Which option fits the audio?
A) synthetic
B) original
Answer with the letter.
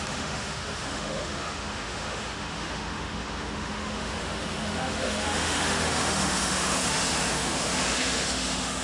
A